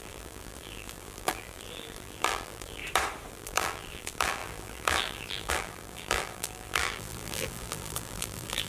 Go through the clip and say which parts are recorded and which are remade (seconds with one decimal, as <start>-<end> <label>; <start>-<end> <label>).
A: 0.0-2.8 remade; 2.8-3.3 recorded; 3.3-8.7 remade